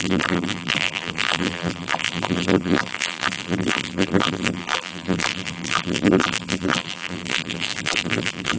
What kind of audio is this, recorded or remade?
remade